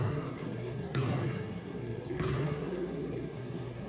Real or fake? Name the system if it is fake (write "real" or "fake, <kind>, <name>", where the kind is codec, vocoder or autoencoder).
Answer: fake, codec, SNAC